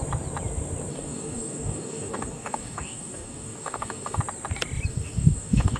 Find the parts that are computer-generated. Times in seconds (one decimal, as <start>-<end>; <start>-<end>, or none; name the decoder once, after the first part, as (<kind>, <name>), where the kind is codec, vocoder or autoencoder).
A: 0.9-4.2 (codec, DAC); 4.9-5.8